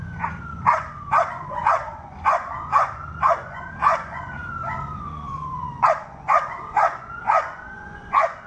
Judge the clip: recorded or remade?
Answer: remade